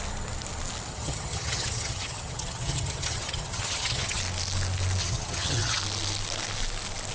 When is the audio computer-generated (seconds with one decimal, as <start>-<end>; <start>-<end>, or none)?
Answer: 0.9-4.2; 5.0-5.8